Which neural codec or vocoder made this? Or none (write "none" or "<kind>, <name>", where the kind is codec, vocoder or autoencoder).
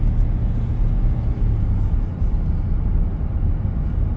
none